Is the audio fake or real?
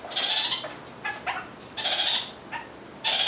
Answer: real